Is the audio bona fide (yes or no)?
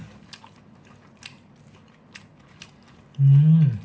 yes